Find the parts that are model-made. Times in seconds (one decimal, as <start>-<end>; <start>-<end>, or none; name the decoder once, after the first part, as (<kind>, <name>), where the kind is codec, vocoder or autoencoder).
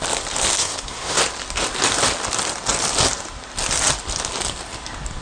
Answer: 0.6-1.2 (codec, SNAC)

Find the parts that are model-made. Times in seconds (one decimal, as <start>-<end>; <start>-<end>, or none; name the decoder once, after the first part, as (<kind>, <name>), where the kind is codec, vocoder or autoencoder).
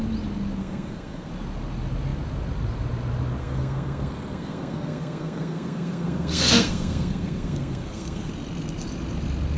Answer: 0.6-1.3 (codec, SNAC); 3.4-8.3